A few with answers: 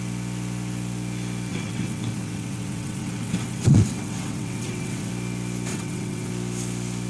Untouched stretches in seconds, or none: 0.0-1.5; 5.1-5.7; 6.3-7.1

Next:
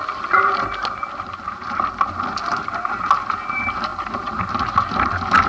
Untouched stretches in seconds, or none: 0.0-5.5